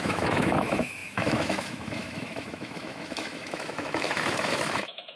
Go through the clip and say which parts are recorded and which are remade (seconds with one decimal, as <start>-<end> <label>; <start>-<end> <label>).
0.0-5.2 remade